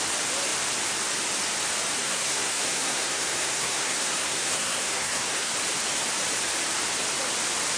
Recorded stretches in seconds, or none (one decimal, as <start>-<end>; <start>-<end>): 0.0-2.0; 5.5-7.8